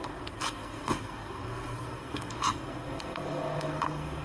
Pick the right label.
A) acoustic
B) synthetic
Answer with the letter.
B